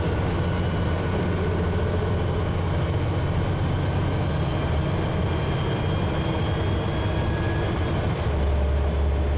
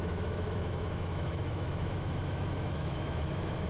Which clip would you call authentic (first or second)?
first